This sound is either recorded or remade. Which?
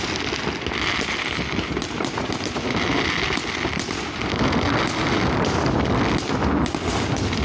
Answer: recorded